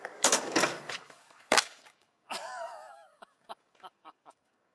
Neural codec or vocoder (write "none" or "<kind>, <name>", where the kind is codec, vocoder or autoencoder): codec, DAC